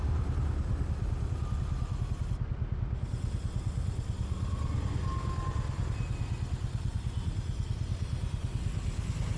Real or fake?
real